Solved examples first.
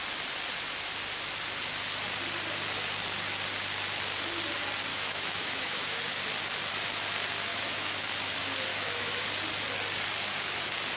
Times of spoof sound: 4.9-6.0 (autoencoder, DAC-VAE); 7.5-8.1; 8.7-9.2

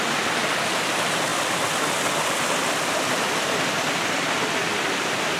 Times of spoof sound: none

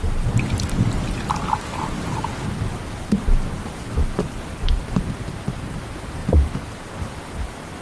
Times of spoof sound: none

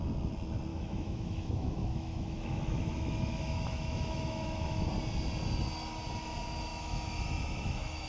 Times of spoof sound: 0.7-4.9 (autoencoder, DAC-VAE); 6.7-8.1

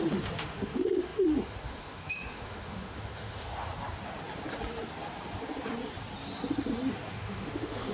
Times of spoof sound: 0.0-3.7 (autoencoder, DAC-VAE); 7.1-7.9